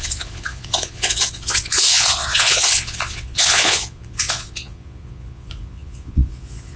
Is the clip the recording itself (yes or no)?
no